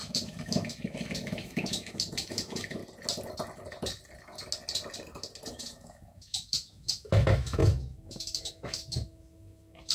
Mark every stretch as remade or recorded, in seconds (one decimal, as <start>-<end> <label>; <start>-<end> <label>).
0.0-2.8 remade; 2.8-5.5 recorded; 5.5-9.9 remade